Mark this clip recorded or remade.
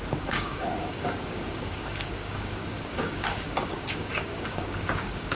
remade